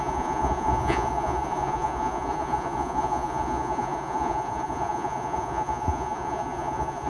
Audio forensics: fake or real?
fake